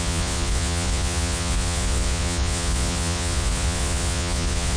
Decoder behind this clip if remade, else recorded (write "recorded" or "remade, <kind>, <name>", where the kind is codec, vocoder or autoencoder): remade, vocoder, Vocos